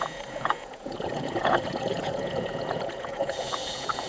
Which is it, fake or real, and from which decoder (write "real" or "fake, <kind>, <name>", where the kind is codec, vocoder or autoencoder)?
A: fake, vocoder, Vocos